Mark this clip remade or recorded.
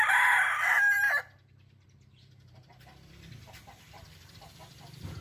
remade